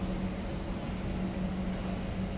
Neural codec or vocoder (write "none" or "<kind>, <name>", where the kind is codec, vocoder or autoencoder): none